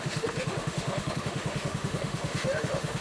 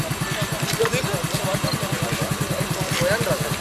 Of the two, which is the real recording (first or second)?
second